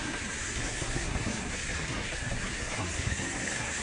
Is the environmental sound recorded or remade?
remade